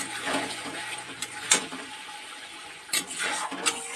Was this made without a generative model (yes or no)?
no